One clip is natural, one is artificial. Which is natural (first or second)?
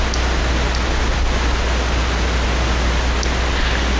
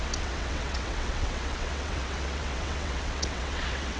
first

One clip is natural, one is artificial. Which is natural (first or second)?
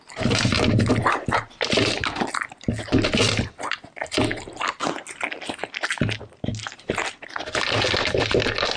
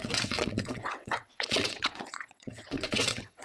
first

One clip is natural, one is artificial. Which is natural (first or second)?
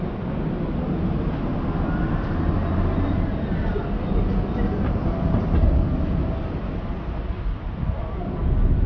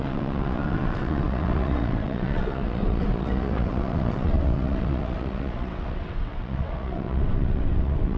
first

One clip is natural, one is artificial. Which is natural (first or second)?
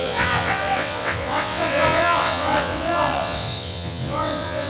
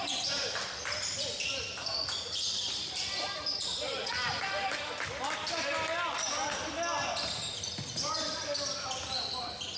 second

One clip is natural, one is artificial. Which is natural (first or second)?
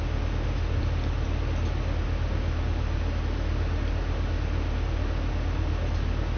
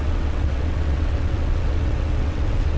first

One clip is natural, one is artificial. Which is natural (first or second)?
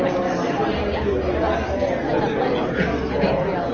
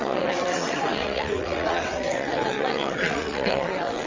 first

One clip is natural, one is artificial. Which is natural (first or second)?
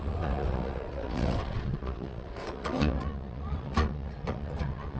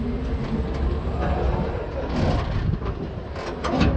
second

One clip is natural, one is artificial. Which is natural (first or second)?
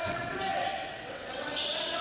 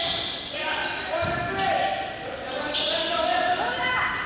second